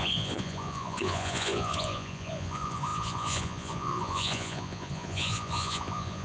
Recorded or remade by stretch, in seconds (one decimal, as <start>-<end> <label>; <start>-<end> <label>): 0.0-6.2 remade